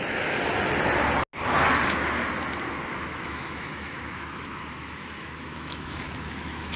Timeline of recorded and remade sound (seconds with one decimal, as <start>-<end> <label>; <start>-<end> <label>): 0.0-3.1 recorded; 3.1-6.8 remade